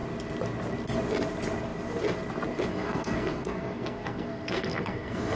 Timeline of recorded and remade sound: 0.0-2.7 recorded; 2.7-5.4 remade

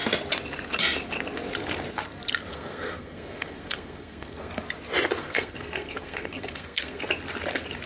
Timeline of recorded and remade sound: 0.0-2.5 recorded; 2.5-4.5 remade; 4.5-5.2 recorded; 5.2-7.0 remade; 7.0-7.9 recorded